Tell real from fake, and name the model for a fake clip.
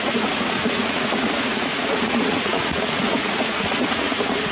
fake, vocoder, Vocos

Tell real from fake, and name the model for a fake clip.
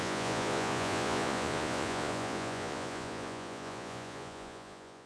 fake, vocoder, Vocos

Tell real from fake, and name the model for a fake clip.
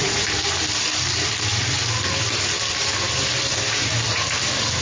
real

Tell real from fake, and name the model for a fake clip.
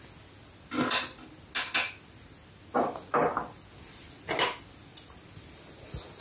real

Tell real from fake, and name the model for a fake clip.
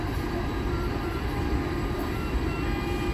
real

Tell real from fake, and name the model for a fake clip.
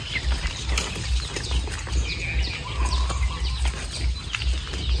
real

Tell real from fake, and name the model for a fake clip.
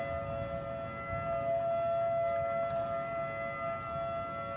real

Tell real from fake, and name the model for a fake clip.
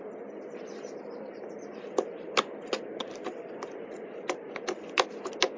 real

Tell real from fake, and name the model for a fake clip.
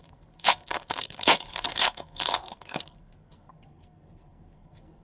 fake, codec, SNAC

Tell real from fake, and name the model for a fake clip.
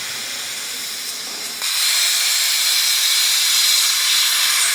fake, vocoder, BigVGAN v2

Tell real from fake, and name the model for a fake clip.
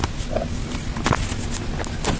real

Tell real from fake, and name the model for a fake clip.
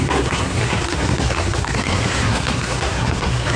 fake, codec, SNAC